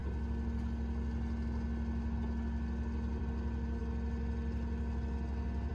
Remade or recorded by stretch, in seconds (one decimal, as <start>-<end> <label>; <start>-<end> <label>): 0.0-5.7 recorded